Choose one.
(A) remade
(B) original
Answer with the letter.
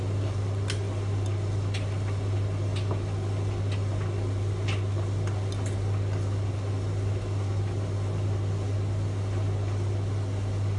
B